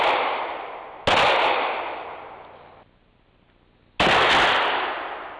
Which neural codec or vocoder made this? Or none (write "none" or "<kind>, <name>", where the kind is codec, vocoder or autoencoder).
none